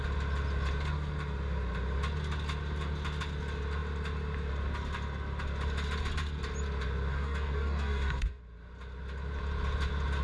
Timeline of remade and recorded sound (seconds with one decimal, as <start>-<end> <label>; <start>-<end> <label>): 0.0-7.1 recorded; 7.1-8.4 remade; 8.4-10.2 recorded

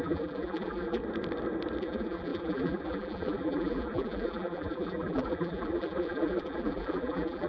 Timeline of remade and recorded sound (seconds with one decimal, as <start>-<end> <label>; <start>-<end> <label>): 0.0-1.0 remade; 1.0-1.8 recorded; 1.8-7.5 remade